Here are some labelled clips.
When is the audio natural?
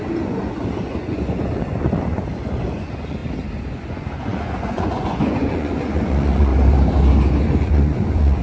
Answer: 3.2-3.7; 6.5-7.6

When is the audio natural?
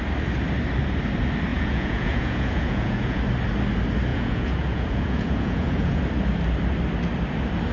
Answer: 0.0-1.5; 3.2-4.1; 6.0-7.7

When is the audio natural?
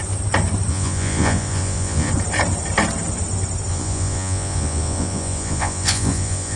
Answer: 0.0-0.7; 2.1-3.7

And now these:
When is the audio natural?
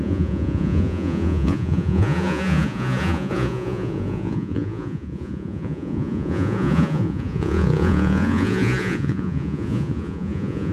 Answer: none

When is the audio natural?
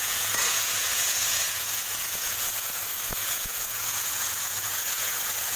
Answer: none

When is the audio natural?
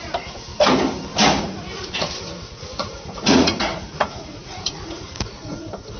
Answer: 0.5-1.4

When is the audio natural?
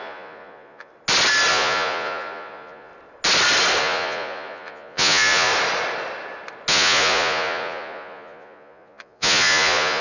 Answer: 0.9-1.5; 2.9-3.8; 5.5-6.7